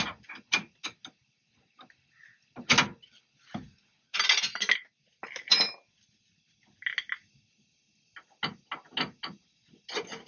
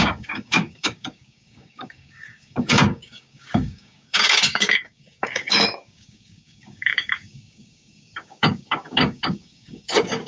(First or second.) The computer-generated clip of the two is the second